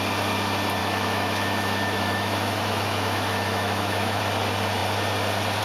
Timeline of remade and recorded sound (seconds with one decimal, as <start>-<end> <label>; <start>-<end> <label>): 0.0-0.8 recorded; 0.8-4.2 remade; 4.2-5.6 recorded